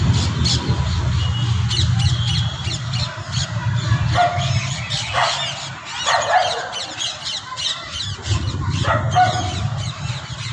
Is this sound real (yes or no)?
yes